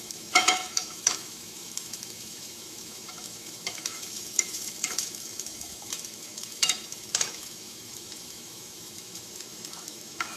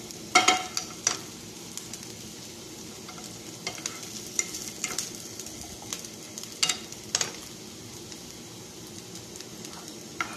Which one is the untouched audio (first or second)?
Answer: second